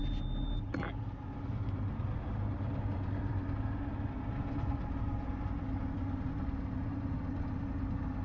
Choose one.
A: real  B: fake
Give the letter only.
A